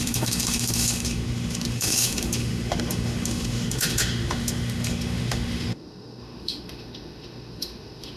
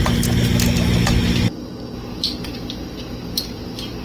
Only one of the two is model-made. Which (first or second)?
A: first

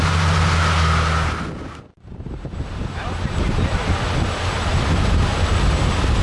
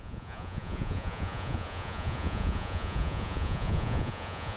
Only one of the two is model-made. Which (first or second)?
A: second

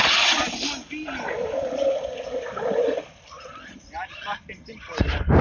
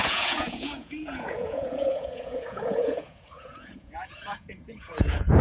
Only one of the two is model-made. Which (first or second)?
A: second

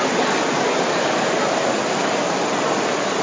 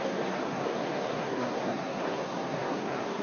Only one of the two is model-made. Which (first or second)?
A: second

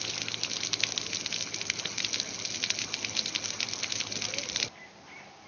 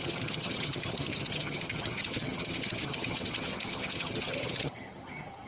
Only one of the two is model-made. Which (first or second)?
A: second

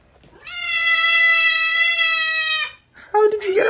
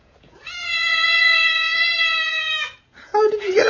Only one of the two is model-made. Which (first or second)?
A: second